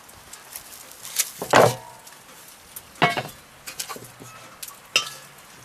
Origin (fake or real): real